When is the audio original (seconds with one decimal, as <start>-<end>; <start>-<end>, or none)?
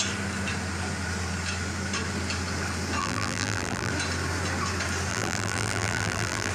0.0-3.0; 3.9-5.1